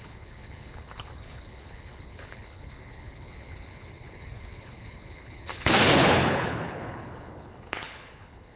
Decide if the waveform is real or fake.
fake